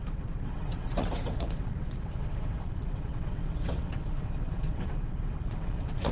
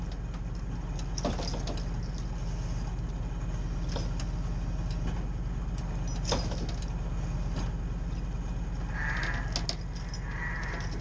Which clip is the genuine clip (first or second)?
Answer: second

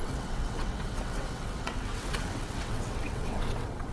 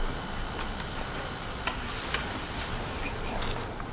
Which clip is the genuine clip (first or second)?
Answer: second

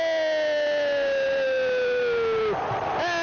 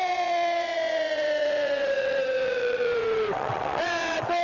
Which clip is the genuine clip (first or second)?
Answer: first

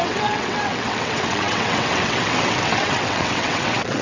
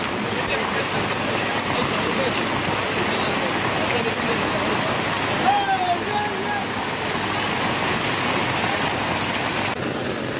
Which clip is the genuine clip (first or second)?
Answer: second